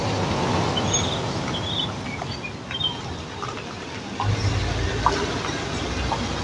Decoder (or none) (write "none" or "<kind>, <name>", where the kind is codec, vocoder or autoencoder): none